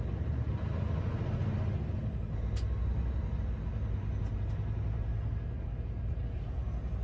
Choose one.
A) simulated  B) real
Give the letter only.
B